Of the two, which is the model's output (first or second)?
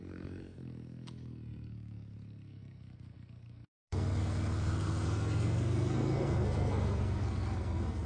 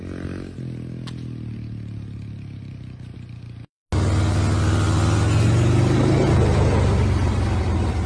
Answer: first